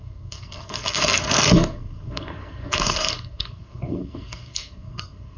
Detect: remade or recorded remade